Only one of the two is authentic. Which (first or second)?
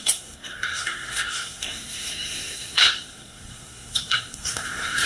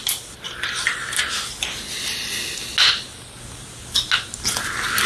second